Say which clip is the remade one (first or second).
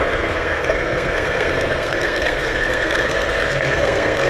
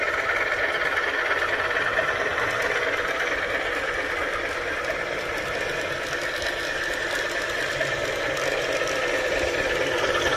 first